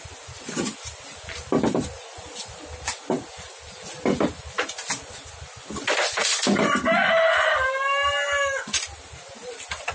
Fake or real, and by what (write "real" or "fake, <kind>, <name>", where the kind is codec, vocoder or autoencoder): real